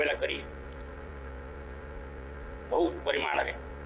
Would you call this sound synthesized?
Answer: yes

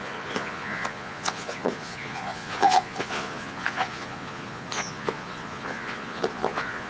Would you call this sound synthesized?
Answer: yes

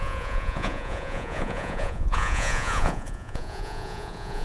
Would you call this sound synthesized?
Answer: yes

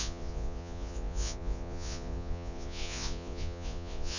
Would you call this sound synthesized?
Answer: yes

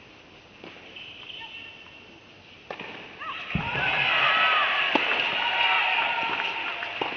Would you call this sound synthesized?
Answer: no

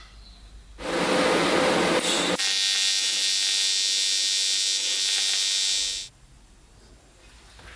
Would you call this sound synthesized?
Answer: no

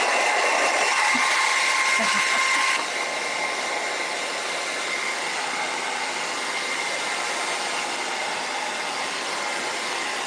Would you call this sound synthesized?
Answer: no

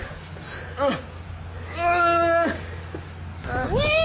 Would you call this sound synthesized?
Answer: no